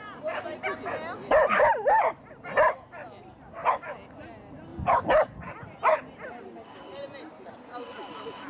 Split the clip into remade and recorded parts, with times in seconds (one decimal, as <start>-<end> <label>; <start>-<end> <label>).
0.0-1.4 recorded; 1.4-2.1 remade; 2.1-8.5 recorded